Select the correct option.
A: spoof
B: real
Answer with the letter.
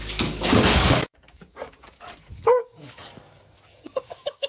A